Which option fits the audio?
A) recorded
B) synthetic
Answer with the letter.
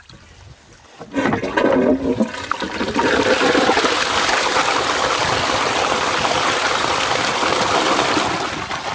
A